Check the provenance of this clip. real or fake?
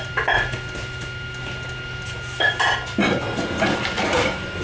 real